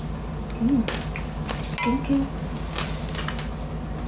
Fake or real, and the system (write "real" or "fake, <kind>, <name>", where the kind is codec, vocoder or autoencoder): real